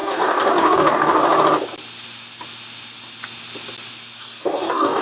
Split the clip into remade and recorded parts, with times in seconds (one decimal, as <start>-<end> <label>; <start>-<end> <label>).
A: 0.0-1.2 remade; 1.2-4.2 recorded; 4.2-5.0 remade